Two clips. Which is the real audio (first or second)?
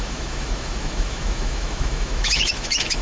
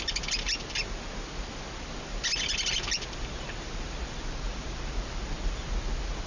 second